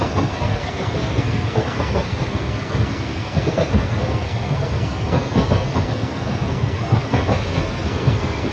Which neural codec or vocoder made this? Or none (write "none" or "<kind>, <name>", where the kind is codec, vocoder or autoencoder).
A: codec, SNAC